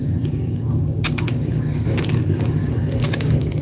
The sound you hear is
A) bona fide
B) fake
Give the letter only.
B